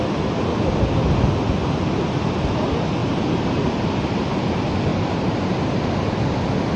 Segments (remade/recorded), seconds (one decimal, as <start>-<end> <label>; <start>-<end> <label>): 0.0-3.0 recorded; 3.0-4.2 remade; 4.2-4.9 recorded; 4.9-5.8 remade; 5.8-6.8 recorded